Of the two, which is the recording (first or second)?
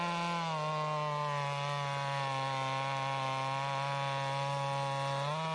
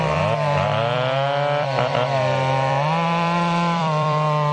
first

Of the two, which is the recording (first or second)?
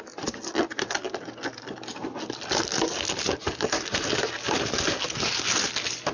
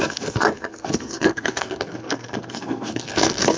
first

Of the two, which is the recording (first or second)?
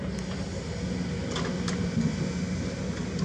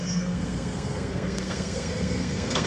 first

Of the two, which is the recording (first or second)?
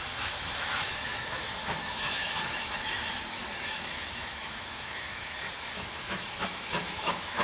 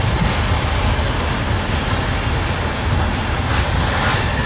second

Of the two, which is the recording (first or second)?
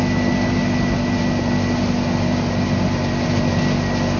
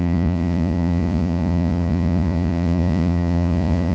first